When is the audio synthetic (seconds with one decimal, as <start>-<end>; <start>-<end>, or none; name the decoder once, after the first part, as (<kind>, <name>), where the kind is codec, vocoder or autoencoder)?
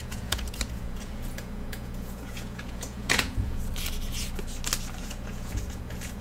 0.0-3.7 (vocoder, Vocos); 5.0-6.2